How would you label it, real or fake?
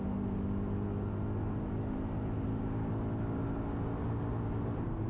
real